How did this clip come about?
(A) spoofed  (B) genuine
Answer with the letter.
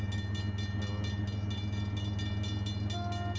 B